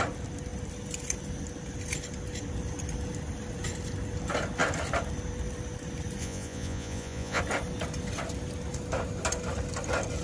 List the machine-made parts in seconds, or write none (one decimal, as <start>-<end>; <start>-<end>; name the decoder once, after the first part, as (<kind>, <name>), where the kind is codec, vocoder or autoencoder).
6.2-7.4 (vocoder, Vocos)